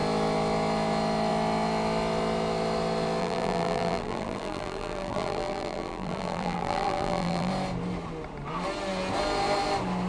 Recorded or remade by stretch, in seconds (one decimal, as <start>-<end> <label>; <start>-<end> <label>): 0.0-3.2 recorded; 3.2-7.5 remade; 7.5-10.1 recorded